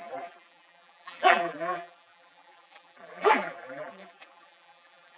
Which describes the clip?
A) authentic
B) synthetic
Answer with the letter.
B